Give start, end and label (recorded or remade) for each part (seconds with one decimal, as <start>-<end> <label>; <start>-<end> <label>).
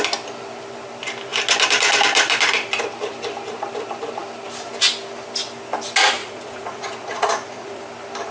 0.0-6.2 recorded; 6.2-7.8 remade; 7.8-8.3 recorded